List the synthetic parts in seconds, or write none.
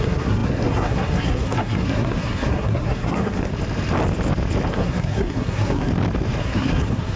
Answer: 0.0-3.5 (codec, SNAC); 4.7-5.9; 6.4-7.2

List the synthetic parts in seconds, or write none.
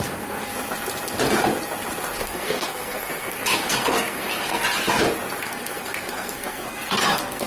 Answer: 0.0-0.5 (codec, SNAC); 2.2-4.6; 5.4-7.5